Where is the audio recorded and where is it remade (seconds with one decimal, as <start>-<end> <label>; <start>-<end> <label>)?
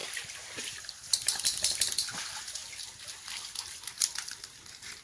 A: 0.0-5.0 recorded